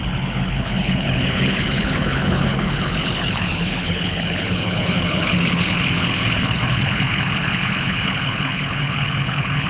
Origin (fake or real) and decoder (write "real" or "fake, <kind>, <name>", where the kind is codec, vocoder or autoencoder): fake, codec, HILCodec